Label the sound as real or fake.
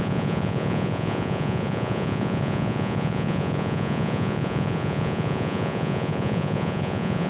fake